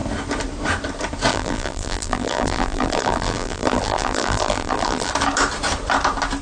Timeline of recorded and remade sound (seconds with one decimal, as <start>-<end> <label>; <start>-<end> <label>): 0.0-1.3 recorded; 1.3-5.1 remade; 5.1-6.4 recorded